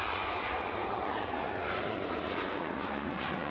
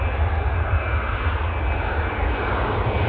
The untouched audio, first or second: second